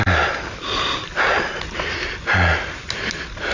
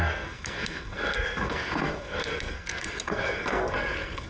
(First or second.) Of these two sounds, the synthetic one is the second